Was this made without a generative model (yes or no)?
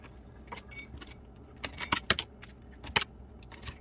yes